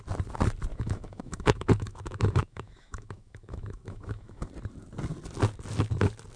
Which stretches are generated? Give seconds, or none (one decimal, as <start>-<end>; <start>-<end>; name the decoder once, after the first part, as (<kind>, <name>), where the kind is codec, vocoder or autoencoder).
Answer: 0.7-4.5 (autoencoder, DAC-VAE)

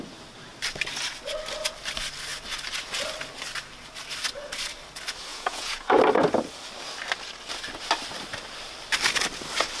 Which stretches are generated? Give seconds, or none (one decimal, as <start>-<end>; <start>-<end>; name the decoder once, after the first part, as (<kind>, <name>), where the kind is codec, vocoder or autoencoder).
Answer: 5.3-6.0 (vocoder, Vocos)